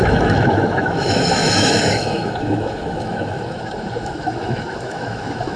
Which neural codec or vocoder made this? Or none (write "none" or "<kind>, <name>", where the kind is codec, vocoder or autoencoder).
autoencoder, DAC-VAE